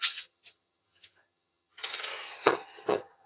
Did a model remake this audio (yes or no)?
yes